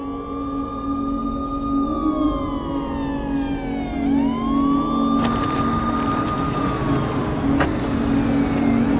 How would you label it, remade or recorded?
recorded